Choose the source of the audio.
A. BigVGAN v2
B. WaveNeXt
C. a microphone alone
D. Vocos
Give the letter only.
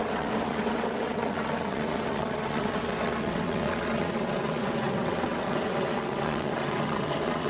B